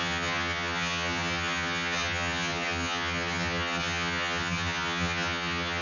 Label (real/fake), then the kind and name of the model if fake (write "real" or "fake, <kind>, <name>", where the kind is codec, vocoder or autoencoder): fake, vocoder, HiFi-GAN